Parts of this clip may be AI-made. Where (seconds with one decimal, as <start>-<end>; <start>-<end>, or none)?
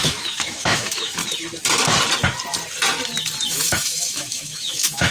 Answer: 0.0-1.2; 3.5-5.1